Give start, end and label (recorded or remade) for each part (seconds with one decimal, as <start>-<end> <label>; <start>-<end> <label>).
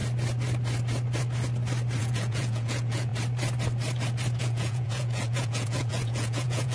0.0-2.0 recorded; 2.0-3.1 remade; 3.1-4.4 recorded; 4.4-6.7 remade